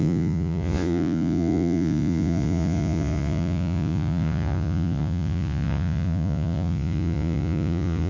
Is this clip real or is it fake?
fake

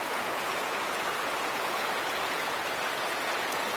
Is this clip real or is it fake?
fake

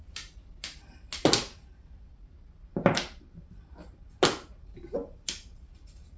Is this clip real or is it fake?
real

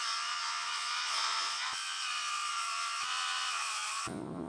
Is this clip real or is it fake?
fake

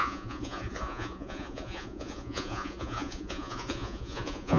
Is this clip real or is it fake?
fake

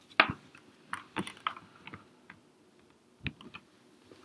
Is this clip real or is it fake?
real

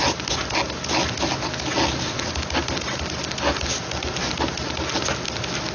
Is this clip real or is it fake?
real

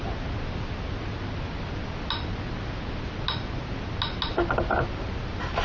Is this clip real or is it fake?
real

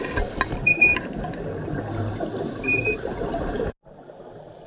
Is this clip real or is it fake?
real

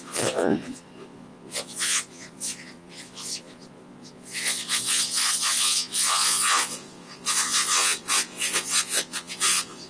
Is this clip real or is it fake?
fake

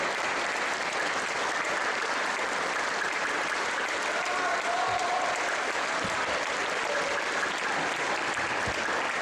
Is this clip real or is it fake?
real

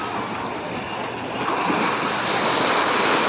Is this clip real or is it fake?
real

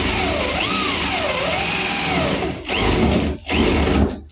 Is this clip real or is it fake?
real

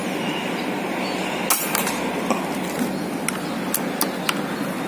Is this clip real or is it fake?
real